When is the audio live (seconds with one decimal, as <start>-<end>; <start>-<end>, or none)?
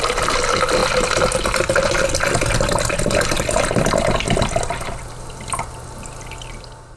0.0-7.0